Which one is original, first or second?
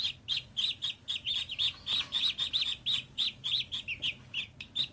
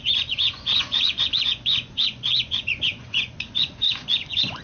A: first